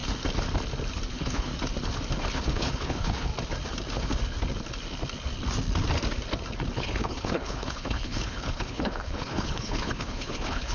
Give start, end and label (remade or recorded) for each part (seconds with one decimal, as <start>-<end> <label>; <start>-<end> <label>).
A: 0.0-1.1 recorded; 1.1-1.5 remade; 1.5-2.3 recorded; 2.3-3.3 remade; 3.3-6.8 recorded; 6.8-10.7 remade